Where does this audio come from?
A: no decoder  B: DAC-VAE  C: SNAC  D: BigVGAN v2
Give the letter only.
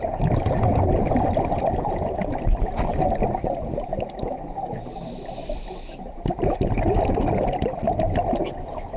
D